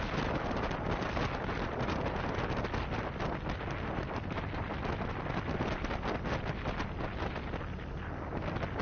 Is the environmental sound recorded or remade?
recorded